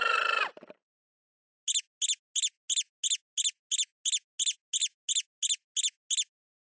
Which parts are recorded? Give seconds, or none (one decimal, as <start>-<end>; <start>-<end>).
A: 0.0-6.7